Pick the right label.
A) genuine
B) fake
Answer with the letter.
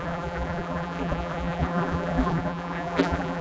B